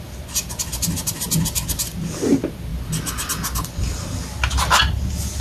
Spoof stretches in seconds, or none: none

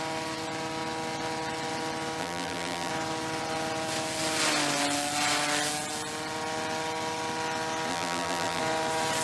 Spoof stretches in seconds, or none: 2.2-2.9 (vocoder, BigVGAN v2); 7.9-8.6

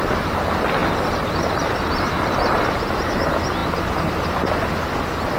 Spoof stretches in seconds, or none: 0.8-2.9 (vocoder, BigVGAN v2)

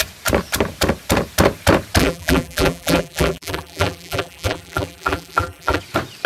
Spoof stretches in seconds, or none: 2.0-5.8 (vocoder, BigVGAN v2)

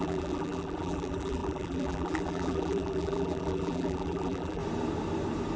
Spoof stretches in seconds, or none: 0.0-4.6 (vocoder, BigVGAN v2)

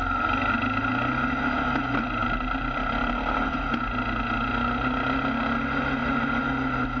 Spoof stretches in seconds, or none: 2.2-3.5 (vocoder, BigVGAN v2); 6.0-6.5